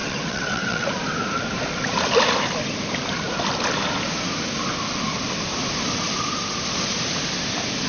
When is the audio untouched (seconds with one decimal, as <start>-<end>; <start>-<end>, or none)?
0.9-7.9